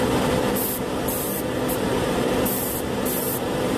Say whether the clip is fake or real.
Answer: real